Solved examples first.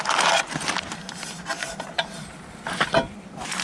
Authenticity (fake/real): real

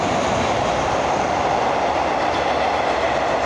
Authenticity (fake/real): real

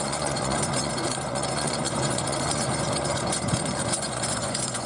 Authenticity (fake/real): fake